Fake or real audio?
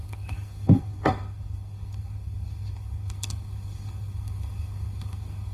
fake